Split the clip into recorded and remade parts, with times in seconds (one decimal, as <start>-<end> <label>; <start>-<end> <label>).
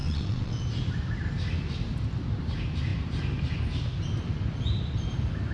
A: 0.0-0.6 remade; 0.6-5.5 recorded